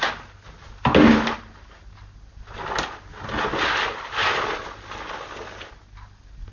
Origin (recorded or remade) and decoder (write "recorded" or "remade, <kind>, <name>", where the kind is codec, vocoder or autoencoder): recorded